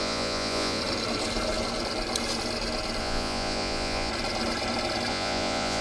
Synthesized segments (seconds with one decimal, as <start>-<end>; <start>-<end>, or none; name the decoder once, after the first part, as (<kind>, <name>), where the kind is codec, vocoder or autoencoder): 0.0-0.8 (vocoder, Vocos); 3.0-4.1; 5.1-5.8